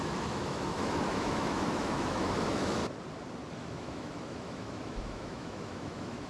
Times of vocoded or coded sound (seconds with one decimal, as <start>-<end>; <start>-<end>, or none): 0.0-2.8; 3.5-6.3